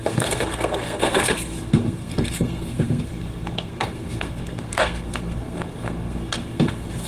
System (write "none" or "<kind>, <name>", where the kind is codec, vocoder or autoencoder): codec, SNAC